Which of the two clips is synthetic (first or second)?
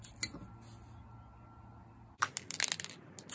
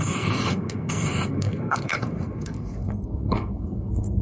second